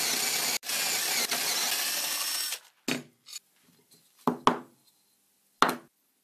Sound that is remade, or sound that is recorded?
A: recorded